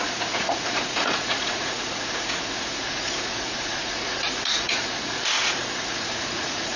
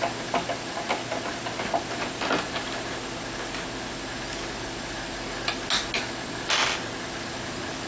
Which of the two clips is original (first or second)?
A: second